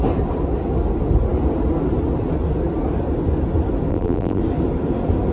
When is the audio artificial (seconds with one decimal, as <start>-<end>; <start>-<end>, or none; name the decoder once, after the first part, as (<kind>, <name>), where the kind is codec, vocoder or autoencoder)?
3.9-4.4 (vocoder, BigVGAN v2)